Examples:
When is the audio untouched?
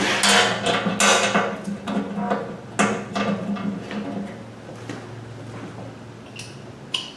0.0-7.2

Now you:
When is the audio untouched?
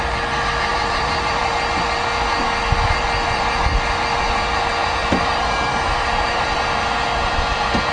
0.0-0.7; 1.5-5.0; 6.6-7.9